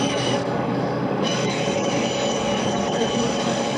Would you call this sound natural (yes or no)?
no